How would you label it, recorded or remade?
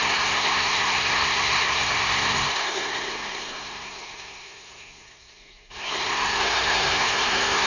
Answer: remade